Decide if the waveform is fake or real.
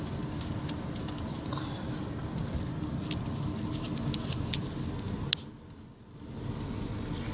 real